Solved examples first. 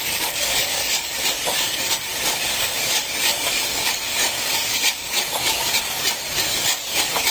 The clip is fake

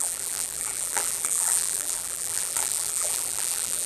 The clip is fake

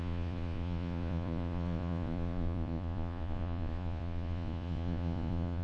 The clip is fake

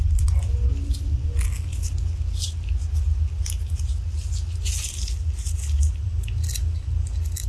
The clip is real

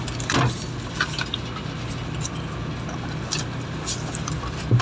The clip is real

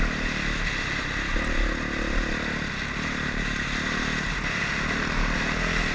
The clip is real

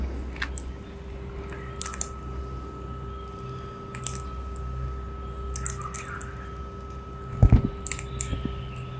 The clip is real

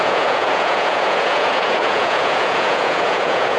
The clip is fake